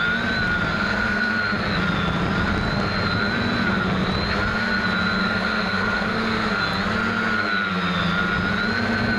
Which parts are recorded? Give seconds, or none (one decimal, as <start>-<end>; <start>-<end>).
0.0-0.7; 1.3-5.2; 6.6-9.2